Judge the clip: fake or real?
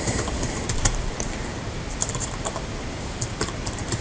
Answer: fake